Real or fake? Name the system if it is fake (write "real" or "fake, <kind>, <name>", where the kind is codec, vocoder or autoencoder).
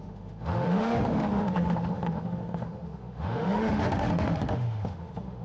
fake, autoencoder, DAC-VAE